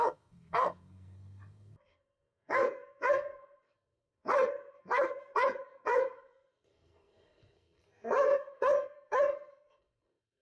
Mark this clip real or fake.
fake